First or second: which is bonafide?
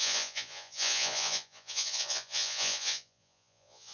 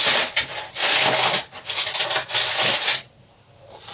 second